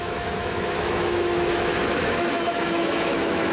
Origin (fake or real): fake